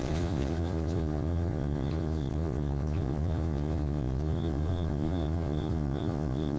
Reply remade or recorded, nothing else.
remade